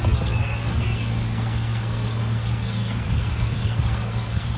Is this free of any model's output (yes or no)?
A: no